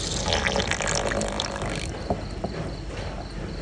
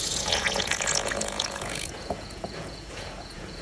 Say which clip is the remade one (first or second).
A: second